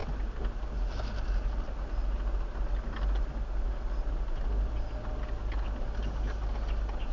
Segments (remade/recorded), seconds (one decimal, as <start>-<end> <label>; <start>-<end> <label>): 0.0-7.1 recorded